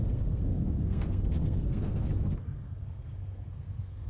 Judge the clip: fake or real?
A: fake